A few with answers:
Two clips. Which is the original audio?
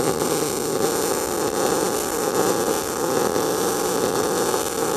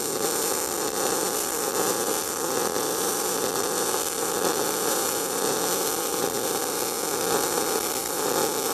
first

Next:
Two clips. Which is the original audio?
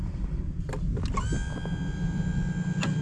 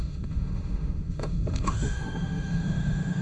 first